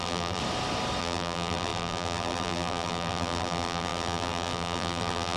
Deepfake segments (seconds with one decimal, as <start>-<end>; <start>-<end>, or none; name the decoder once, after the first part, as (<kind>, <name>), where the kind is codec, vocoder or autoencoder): 0.0-0.4 (vocoder, BigVGAN v2); 1.0-5.4